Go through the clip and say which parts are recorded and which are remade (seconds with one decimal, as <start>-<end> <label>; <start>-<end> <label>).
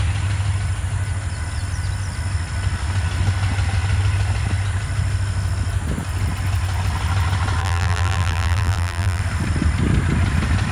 0.0-7.6 recorded; 7.6-9.2 remade; 9.2-10.7 recorded